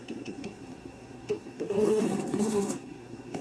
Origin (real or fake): fake